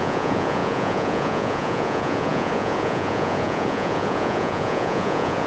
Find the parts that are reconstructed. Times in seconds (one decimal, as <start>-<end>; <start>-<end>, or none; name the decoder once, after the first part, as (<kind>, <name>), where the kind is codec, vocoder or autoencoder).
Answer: 0.0-5.5 (vocoder, Vocos)